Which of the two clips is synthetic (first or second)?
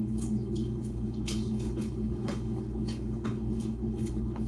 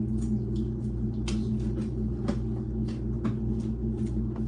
first